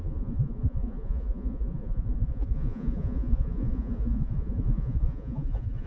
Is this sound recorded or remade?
remade